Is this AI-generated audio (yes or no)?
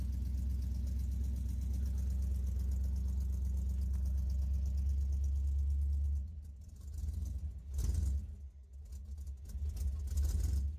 no